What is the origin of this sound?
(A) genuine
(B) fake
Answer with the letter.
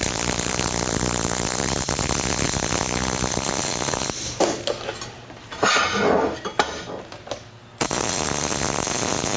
A